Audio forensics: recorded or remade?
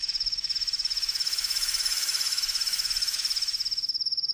remade